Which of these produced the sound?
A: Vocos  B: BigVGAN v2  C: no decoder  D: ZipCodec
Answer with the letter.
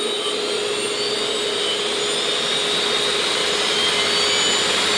C